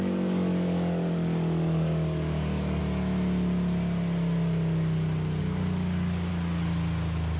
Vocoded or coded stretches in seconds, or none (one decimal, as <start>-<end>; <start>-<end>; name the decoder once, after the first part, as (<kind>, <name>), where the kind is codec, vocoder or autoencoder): 0.0-2.8 (codec, DAC); 5.4-6.3